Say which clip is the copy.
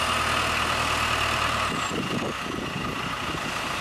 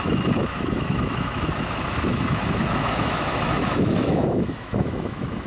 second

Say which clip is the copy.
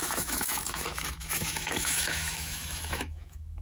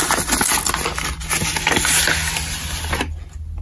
first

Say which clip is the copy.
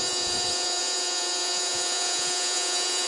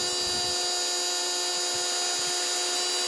first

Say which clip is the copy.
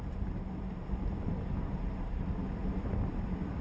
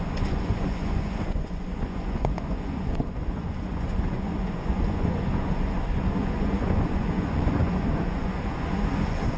second